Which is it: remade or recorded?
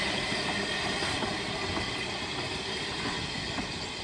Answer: recorded